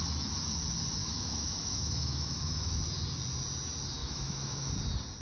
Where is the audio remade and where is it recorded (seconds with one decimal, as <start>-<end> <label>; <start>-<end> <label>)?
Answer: 0.0-1.0 recorded; 1.0-2.8 remade; 2.8-4.0 recorded; 4.0-4.7 remade; 4.7-5.2 recorded